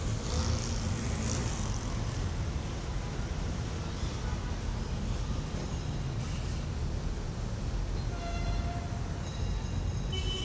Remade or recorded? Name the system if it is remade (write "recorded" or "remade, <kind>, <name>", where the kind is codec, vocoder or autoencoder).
recorded